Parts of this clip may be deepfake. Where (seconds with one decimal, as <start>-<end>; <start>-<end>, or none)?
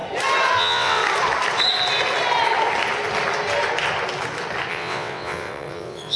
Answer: 0.6-1.0; 4.7-6.2